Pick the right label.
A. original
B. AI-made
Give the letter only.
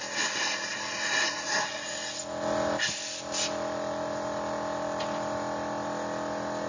A